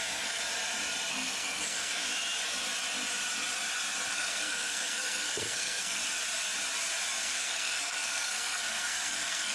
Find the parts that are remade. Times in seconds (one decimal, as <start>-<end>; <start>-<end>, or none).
0.0-0.4; 1.1-2.0; 4.1-6.0; 7.2-9.5